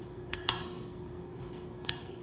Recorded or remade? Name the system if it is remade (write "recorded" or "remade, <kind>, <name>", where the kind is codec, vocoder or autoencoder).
remade, codec, SNAC